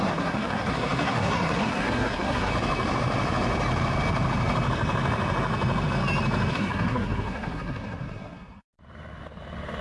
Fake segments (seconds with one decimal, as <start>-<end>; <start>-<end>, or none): 0.0-2.5; 6.5-8.7